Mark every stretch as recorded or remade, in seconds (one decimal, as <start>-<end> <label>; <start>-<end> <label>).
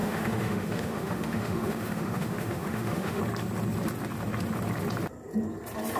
0.0-3.2 remade; 3.2-6.0 recorded